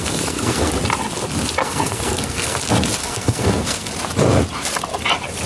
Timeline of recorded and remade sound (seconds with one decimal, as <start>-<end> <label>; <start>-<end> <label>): 0.0-0.7 remade; 0.7-1.6 recorded; 1.6-2.6 remade; 2.6-3.0 recorded; 3.0-3.9 remade; 3.9-5.5 recorded